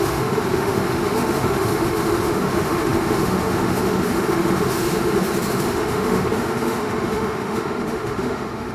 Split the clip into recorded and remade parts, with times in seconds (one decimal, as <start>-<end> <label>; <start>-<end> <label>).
0.0-8.7 remade